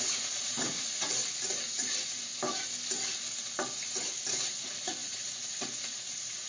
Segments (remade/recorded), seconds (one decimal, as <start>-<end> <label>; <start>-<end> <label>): 0.0-1.2 remade; 1.2-1.7 recorded; 1.7-2.3 remade; 2.3-4.3 recorded; 4.3-6.5 remade

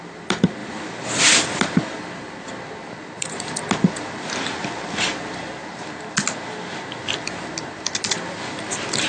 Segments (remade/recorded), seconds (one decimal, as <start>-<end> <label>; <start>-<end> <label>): 0.0-9.1 recorded

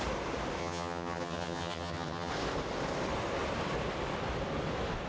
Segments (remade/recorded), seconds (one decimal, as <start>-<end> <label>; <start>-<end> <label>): 0.0-0.6 recorded; 0.6-2.3 remade; 2.3-5.1 recorded

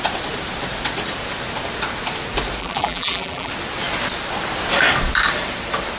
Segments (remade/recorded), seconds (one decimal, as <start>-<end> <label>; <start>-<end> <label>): 0.0-2.6 recorded; 2.6-3.5 remade; 3.5-6.0 recorded

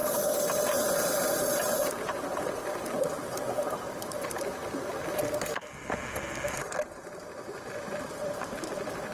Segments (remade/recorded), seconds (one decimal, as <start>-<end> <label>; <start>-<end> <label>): 0.0-4.6 remade; 4.6-7.5 recorded; 7.5-9.1 remade